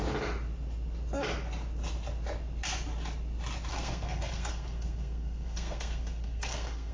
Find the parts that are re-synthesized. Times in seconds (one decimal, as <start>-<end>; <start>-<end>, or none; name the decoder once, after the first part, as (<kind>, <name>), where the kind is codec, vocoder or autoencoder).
3.7-6.9 (codec, SNAC)

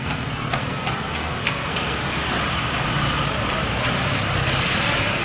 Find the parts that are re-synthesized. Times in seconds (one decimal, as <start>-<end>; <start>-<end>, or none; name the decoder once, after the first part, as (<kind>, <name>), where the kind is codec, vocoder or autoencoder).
0.0-2.0 (codec, SNAC)

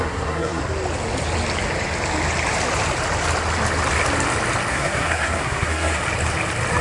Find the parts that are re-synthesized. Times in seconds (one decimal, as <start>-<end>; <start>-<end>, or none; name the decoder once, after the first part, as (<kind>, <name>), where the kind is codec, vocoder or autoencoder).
0.0-0.6 (codec, SNAC); 4.7-6.0

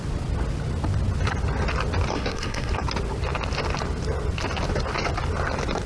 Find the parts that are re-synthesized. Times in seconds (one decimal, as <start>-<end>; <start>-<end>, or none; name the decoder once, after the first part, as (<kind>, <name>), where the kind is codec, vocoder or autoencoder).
2.1-2.7 (codec, SNAC)

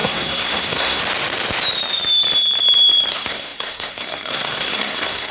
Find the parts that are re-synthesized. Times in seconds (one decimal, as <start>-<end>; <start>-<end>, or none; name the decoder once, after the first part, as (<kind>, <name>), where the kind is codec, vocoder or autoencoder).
0.0-1.0 (codec, SNAC); 3.1-5.3